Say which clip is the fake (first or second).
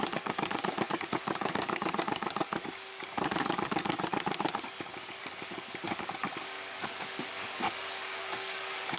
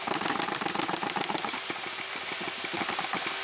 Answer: first